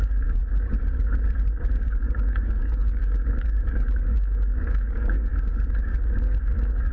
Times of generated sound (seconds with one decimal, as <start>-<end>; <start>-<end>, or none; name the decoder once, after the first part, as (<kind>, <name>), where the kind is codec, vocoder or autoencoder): 0.0-0.4 (codec, DAC); 1.7-5.3; 6.0-6.9